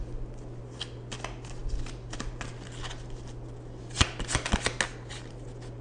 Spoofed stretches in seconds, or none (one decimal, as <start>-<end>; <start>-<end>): none

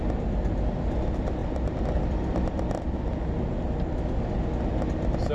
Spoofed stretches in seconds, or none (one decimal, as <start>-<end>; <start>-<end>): none

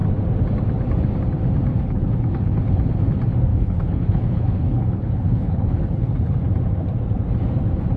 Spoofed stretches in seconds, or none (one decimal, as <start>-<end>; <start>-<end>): 1.7-3.0; 3.5-6.3

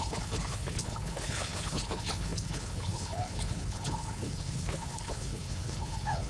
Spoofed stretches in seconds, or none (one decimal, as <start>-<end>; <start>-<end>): 0.0-6.3

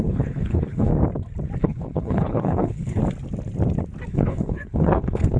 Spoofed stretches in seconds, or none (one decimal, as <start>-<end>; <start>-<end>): 0.0-0.9; 1.6-3.0; 4.1-5.4

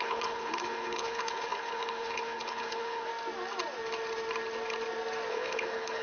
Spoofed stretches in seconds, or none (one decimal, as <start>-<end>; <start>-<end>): 0.0-3.1; 5.3-6.0

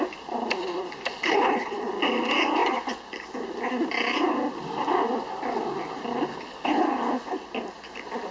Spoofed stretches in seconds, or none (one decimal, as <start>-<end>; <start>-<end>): 1.2-1.9; 6.3-6.8